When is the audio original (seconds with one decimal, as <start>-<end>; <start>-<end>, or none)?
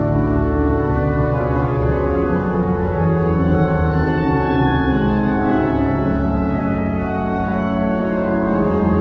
5.5-6.6